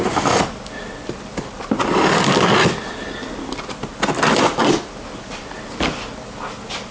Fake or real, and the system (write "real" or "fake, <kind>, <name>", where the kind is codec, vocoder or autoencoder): real